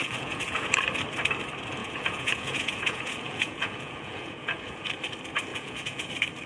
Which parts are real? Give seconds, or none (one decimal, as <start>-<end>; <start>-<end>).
0.8-1.8; 4.9-5.5; 6.1-6.5

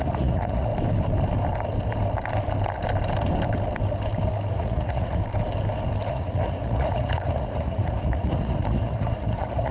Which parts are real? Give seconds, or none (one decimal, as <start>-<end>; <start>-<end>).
0.7-4.5; 5.2-6.1

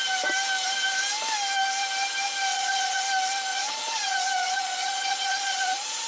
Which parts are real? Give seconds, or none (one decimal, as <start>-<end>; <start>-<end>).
0.0-2.5; 3.0-3.5

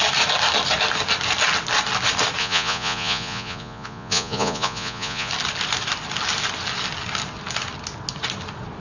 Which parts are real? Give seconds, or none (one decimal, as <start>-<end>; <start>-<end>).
0.0-2.4; 5.3-8.8

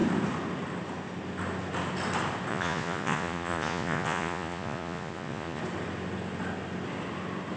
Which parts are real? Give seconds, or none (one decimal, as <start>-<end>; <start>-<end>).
0.0-2.5; 5.6-7.6

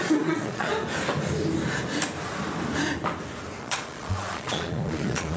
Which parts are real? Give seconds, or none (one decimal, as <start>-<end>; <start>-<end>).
0.7-3.6

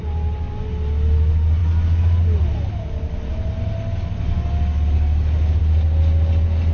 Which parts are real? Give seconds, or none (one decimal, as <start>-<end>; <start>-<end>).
0.0-6.7

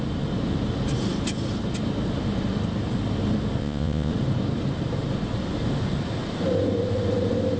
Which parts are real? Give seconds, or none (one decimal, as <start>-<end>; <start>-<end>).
0.0-3.6; 4.1-7.6